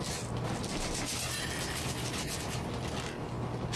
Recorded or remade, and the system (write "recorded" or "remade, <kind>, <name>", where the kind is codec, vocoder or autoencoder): recorded